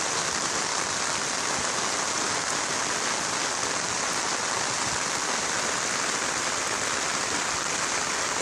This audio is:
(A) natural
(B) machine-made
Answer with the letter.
A